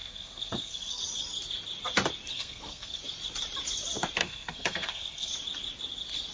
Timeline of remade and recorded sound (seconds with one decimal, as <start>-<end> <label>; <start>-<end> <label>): 0.0-1.0 remade; 1.0-2.3 recorded; 2.3-3.0 remade; 3.0-4.2 recorded; 4.2-5.3 remade; 5.3-6.3 recorded